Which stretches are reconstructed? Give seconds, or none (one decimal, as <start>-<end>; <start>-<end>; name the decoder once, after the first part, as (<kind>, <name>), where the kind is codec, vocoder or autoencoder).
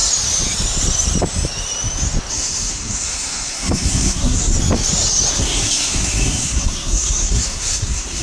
2.3-4.5 (codec, SNAC); 5.3-8.2